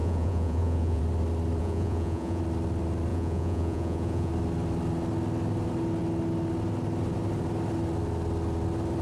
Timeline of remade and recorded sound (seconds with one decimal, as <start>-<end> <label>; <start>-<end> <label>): 0.0-1.0 remade; 1.0-1.6 recorded; 1.6-2.4 remade; 2.4-3.1 recorded; 3.1-4.3 remade; 4.3-9.0 recorded